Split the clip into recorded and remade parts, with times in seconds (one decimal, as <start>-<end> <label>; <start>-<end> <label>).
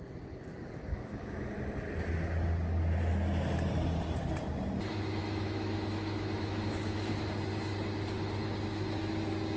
0.0-0.9 recorded; 0.9-1.5 remade; 1.5-5.2 recorded; 5.2-7.1 remade; 7.1-9.6 recorded